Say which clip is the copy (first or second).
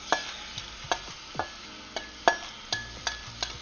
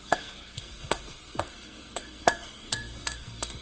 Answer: second